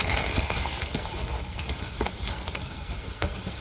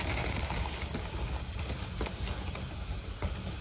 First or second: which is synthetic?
first